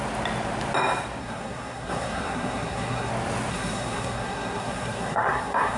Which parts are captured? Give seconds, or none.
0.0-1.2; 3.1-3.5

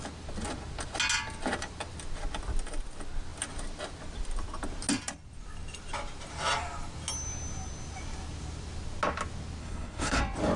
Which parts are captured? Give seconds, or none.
0.0-9.6; 10.2-10.6

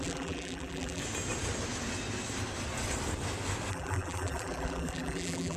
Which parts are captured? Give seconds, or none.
1.0-3.7

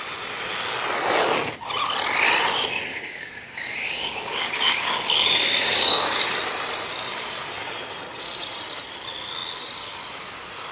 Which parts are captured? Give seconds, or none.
0.0-2.9; 6.2-10.7

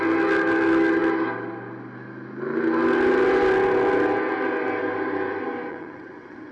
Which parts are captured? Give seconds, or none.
0.0-5.7